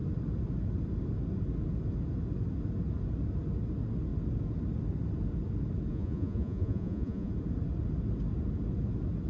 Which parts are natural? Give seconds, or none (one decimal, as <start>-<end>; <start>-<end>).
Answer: 0.0-5.9; 7.3-9.3